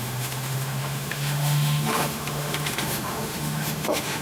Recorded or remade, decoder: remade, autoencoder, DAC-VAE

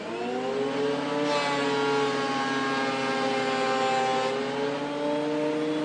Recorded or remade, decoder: recorded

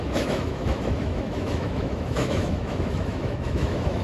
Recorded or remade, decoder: remade, autoencoder, DAC-VAE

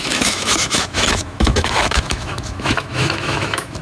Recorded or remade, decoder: remade, autoencoder, DAC-VAE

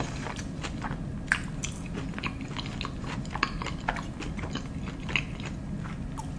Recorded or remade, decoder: recorded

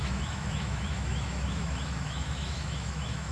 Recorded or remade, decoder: remade, autoencoder, DAC-VAE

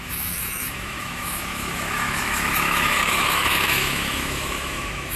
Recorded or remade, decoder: remade, autoencoder, DAC-VAE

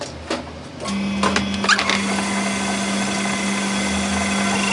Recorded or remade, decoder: recorded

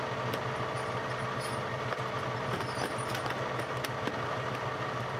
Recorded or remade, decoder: recorded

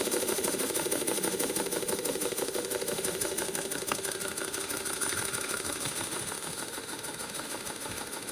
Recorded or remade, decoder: remade, autoencoder, DAC-VAE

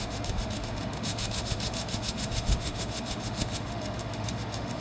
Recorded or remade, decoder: remade, autoencoder, DAC-VAE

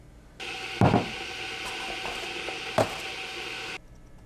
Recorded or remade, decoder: recorded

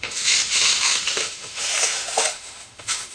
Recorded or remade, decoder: remade, autoencoder, DAC-VAE